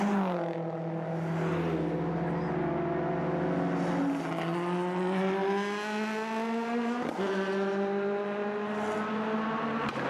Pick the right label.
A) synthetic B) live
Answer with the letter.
B